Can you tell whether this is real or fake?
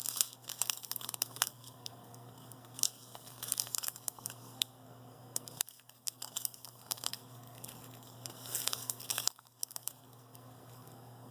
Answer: fake